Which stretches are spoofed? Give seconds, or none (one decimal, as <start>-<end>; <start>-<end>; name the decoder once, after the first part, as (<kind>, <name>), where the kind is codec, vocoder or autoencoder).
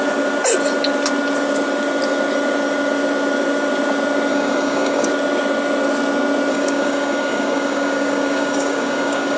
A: 4.3-5.1 (codec, DAC); 6.5-9.4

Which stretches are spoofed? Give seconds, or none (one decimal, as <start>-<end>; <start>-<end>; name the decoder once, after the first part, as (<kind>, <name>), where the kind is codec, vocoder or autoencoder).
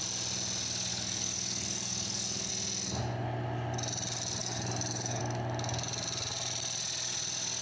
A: 0.9-2.5 (codec, DAC); 4.4-5.2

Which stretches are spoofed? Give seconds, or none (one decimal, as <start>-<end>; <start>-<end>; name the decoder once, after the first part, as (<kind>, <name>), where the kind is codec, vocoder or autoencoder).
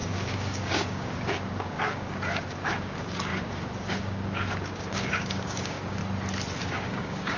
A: 0.0-6.0 (codec, DAC); 6.6-7.4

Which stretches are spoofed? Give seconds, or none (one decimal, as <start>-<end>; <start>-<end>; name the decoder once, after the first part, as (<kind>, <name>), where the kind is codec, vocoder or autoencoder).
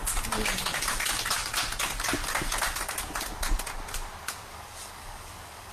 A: 4.5-5.7 (codec, DAC)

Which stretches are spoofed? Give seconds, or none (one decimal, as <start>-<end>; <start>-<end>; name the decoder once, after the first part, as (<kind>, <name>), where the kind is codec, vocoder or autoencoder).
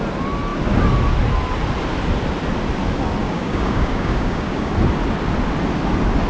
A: 3.2-4.7 (codec, DAC)